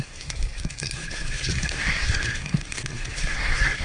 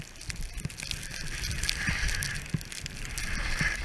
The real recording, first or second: second